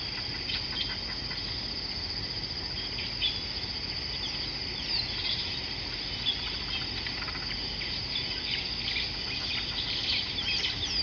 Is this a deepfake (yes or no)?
no